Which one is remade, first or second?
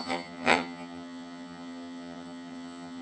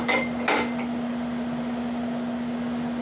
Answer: first